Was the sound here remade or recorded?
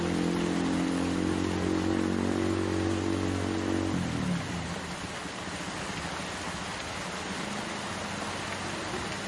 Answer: recorded